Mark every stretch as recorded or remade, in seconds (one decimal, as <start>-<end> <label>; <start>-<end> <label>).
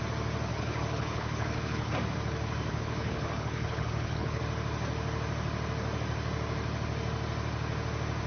0.0-0.5 recorded; 0.5-1.9 remade; 1.9-2.7 recorded; 2.7-4.4 remade; 4.4-8.3 recorded